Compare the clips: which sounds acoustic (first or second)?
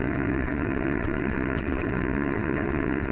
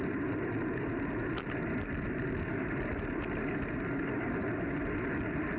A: second